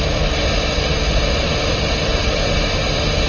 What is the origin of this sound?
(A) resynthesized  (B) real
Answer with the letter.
B